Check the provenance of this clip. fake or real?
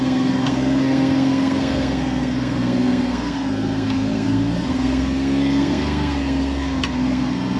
fake